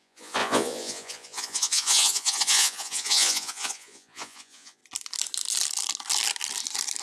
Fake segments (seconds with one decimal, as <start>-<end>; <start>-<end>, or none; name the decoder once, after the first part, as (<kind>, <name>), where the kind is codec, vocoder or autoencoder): 0.0-4.8 (vocoder, Vocos)